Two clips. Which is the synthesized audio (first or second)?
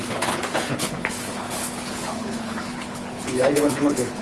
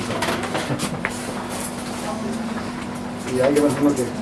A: first